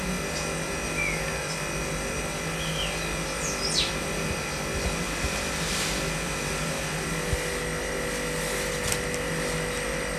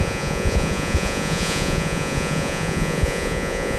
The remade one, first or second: second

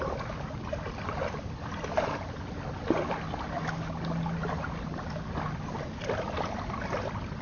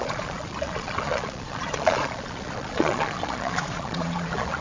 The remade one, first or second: second